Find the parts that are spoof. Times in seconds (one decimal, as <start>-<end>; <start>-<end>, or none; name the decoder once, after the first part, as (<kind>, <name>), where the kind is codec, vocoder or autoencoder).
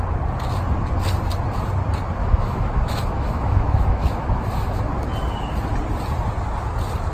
2.2-4.8 (autoencoder, DAC-VAE)